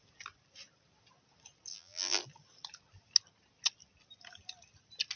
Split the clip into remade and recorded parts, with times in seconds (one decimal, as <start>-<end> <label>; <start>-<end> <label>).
0.0-1.7 recorded; 1.7-2.2 remade; 2.2-5.2 recorded